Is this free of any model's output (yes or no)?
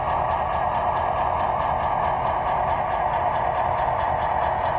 yes